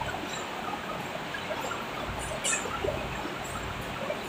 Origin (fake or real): real